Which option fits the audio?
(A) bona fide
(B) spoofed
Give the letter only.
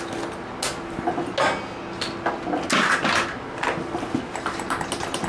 A